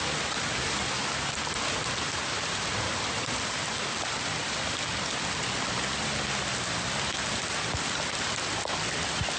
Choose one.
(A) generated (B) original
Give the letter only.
B